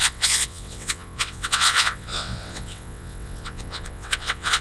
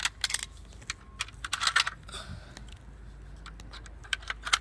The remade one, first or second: first